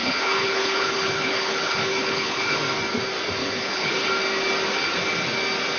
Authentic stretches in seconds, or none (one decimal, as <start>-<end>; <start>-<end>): 2.6-3.4; 4.1-5.8

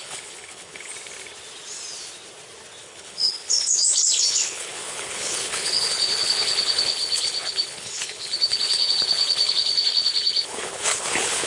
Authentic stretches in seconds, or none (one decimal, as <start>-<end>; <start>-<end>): 0.9-2.8

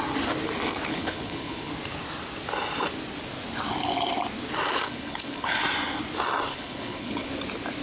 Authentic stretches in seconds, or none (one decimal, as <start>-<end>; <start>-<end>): 0.0-0.9; 1.7-4.7; 5.6-6.5; 7.3-7.8

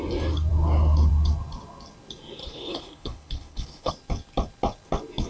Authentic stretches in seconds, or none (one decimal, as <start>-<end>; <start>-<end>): 0.0-2.4; 3.9-5.3

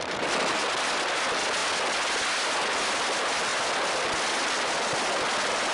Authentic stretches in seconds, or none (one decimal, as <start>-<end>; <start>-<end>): 0.0-5.7

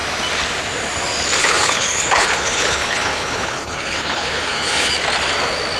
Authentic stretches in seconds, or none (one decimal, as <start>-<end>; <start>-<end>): 0.0-1.4; 4.9-5.8